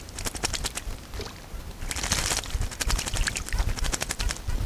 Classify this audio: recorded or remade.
recorded